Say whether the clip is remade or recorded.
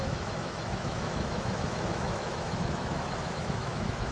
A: remade